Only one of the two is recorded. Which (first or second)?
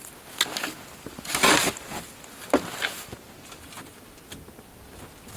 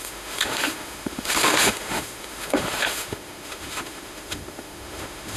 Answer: first